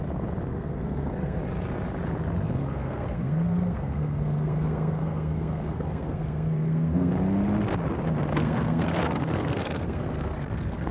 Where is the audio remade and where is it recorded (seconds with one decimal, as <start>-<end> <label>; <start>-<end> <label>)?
0.0-0.5 recorded; 0.5-1.4 remade; 1.4-2.6 recorded; 2.6-7.1 remade; 7.1-8.3 recorded; 8.3-10.9 remade